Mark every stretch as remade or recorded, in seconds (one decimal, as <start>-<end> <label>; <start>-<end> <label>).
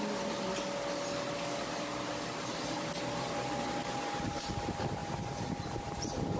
0.0-6.4 recorded